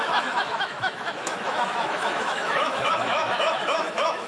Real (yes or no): no